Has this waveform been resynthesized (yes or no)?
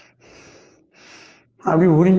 yes